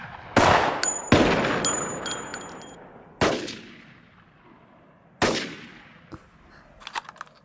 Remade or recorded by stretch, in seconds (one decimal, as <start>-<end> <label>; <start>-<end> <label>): 0.0-7.4 recorded